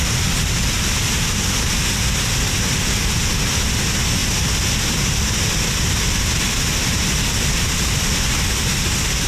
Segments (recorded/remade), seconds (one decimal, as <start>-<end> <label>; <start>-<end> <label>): 0.0-9.3 recorded